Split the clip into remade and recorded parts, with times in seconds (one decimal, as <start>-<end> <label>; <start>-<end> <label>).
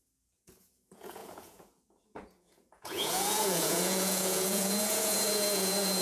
0.0-6.0 remade